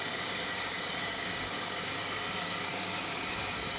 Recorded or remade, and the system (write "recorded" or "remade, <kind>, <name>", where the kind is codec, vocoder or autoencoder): remade, codec, DAC